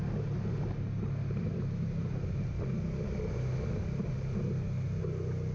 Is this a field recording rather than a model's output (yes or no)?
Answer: yes